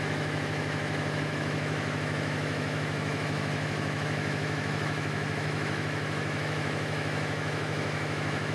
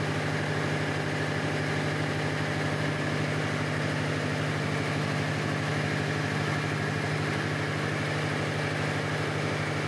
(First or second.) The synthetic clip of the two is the first